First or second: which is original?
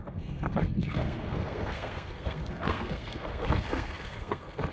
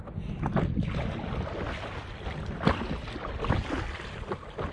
second